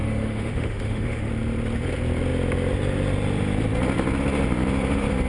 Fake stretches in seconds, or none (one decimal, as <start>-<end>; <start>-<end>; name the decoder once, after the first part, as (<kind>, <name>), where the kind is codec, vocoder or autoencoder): 0.0-1.3 (autoencoder, DAC-VAE)